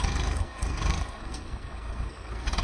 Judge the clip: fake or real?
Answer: fake